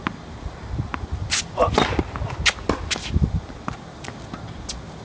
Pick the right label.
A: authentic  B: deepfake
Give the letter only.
A